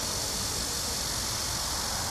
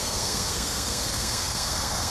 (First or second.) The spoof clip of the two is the second